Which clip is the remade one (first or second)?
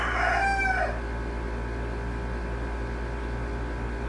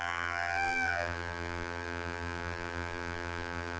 second